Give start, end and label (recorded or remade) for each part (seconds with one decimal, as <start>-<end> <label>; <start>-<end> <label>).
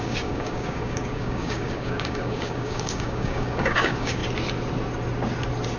0.0-4.2 remade; 4.2-5.8 recorded